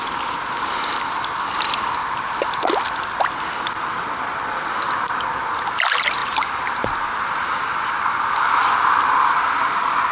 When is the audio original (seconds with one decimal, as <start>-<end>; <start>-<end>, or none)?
0.0-6.2; 8.5-10.1